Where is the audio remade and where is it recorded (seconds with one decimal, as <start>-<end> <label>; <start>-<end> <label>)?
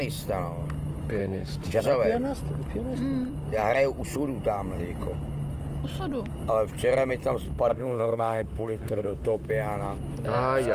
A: 0.0-1.2 recorded; 1.2-1.8 remade; 1.8-7.7 recorded; 7.7-9.5 remade; 9.5-10.7 recorded